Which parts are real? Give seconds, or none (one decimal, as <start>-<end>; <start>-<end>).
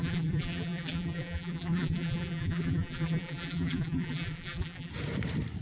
4.9-5.6